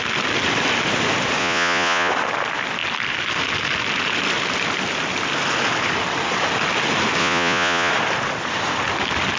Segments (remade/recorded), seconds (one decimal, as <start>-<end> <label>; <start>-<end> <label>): 0.0-1.4 recorded; 1.4-2.1 remade; 2.1-7.2 recorded; 7.2-7.9 remade; 7.9-9.4 recorded